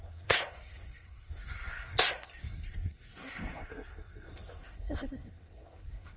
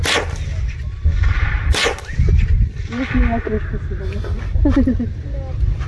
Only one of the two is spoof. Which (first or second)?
first